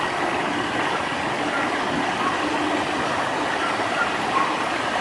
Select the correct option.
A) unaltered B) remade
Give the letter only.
A